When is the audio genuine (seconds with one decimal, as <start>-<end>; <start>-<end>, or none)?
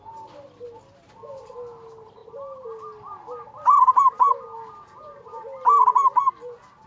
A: 0.0-6.9